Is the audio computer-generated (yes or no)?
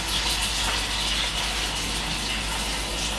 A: no